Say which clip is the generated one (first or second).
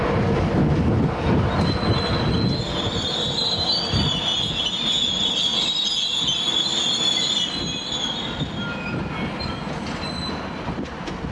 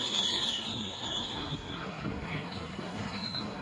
second